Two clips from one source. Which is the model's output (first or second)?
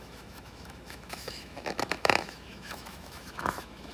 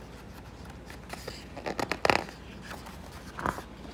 first